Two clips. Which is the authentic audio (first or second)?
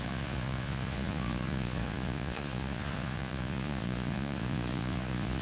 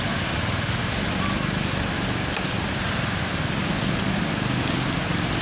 second